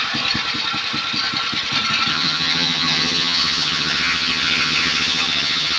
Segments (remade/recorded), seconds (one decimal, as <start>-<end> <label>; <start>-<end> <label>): 0.0-2.1 recorded; 2.1-5.8 remade